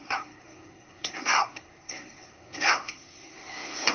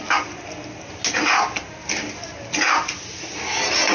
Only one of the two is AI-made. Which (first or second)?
first